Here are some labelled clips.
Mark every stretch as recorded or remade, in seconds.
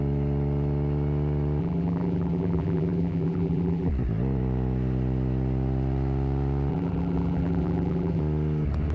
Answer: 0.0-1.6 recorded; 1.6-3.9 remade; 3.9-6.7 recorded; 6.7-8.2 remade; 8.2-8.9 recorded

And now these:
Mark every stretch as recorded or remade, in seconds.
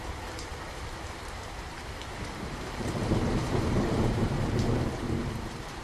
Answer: 0.0-5.8 remade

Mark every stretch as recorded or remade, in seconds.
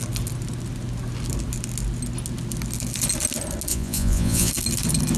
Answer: 0.0-3.7 recorded; 3.7-4.5 remade; 4.5-5.2 recorded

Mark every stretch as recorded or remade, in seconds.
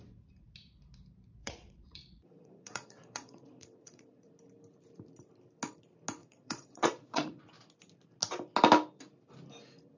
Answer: 0.0-1.4 recorded; 1.4-4.3 remade; 4.3-6.2 recorded; 6.2-7.4 remade; 7.4-10.0 recorded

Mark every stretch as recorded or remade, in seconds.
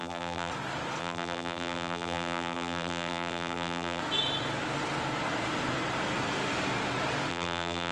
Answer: 0.0-0.5 remade; 0.5-1.0 recorded; 1.0-4.0 remade; 4.0-7.3 recorded; 7.3-7.9 remade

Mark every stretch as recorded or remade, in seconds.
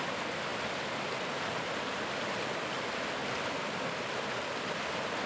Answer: 0.0-5.3 recorded